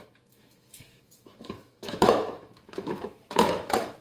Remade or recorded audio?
remade